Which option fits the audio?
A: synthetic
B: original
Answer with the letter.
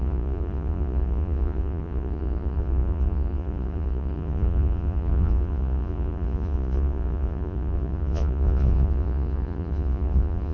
A